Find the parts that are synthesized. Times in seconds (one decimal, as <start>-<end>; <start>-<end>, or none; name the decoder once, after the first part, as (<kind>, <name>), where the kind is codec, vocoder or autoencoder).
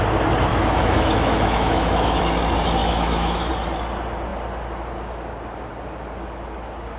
0.5-2.2 (autoencoder, DAC-VAE); 2.8-3.5